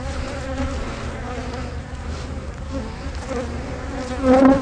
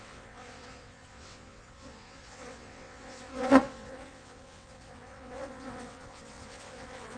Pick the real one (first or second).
first